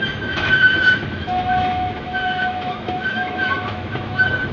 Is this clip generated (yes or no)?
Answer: yes